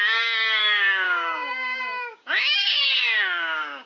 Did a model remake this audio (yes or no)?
yes